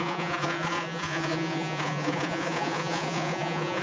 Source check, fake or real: fake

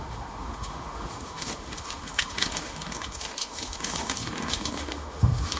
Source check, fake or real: fake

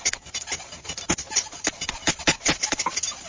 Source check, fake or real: real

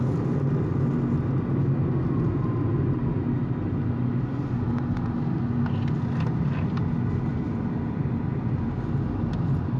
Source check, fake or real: real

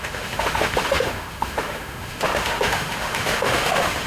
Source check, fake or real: fake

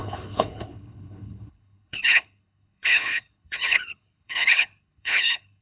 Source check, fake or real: fake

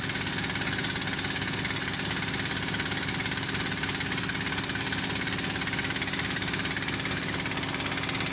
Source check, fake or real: real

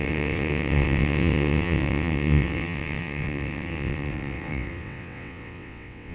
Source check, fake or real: fake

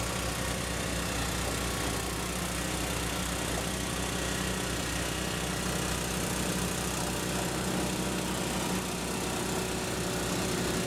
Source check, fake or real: real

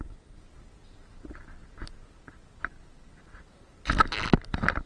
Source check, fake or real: real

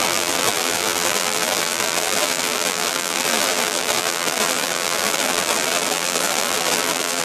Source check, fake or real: fake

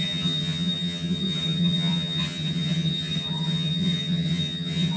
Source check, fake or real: fake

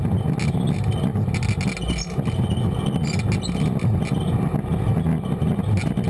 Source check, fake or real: real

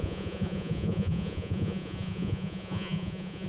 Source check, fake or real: fake